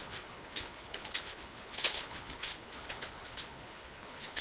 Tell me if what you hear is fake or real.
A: fake